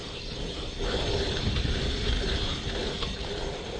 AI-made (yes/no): yes